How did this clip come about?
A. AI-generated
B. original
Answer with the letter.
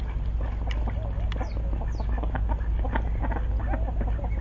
B